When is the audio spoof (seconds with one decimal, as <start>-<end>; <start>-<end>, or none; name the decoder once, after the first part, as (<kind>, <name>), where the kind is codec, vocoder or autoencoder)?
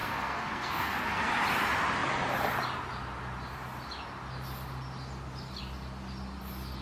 0.0-1.3 (codec, SNAC)